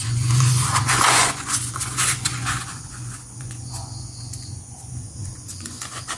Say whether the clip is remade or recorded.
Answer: remade